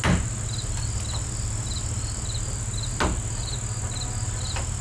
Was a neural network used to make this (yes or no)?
no